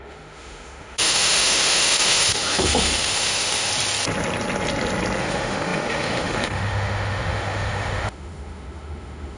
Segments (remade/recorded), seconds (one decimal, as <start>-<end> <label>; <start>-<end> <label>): 0.0-3.7 remade; 3.7-5.2 recorded; 5.2-9.4 remade